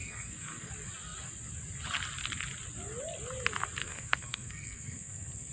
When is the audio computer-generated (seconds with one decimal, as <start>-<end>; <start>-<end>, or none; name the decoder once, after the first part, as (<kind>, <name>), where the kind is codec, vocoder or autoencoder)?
0.0-0.7 (codec, SNAC); 3.8-5.5